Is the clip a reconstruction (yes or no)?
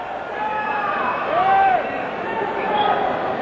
no